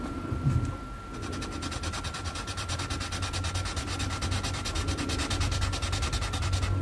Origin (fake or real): real